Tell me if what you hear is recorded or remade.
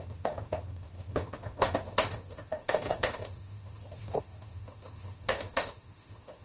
remade